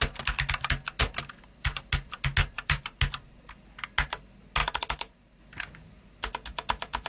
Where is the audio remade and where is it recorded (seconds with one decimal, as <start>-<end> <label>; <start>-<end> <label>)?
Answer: 0.0-1.0 recorded; 1.0-1.8 remade; 1.8-2.4 recorded; 2.4-3.0 remade; 3.0-4.6 recorded; 4.6-5.4 remade; 5.4-7.1 recorded